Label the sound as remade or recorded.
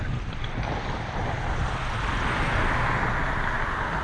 recorded